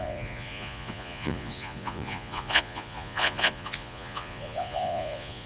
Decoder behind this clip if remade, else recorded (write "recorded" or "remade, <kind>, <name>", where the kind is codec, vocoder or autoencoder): remade, vocoder, Vocos